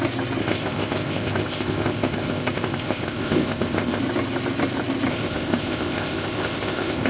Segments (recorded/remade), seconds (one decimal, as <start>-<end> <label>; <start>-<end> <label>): 0.0-0.4 recorded; 0.4-4.0 remade; 4.0-5.1 recorded; 5.1-7.1 remade